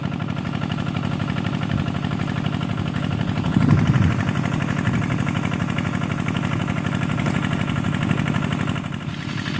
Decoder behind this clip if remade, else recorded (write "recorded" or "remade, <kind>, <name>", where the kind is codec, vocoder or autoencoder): recorded